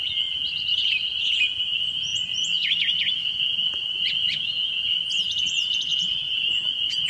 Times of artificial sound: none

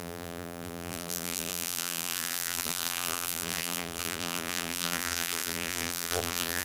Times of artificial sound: 0.0-6.6

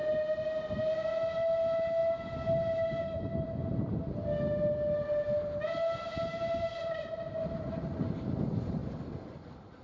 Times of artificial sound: none

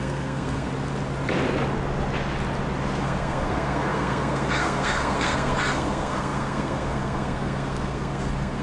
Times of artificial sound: 0.0-0.7; 3.0-8.6

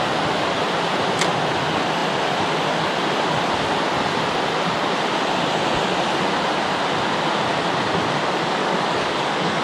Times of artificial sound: 8.6-9.6

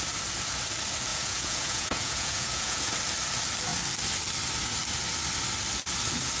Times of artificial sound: 1.1-2.9

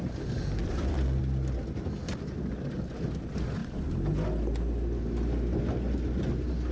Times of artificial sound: 0.6-1.2

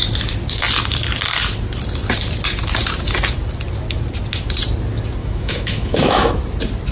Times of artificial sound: 5.2-6.4